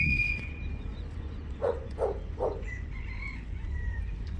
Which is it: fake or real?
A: fake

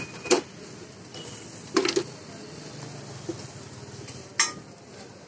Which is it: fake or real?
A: real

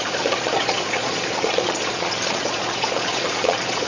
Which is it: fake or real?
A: fake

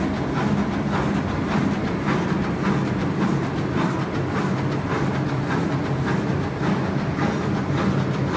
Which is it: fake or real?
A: real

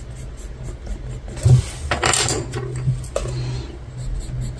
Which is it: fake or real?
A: real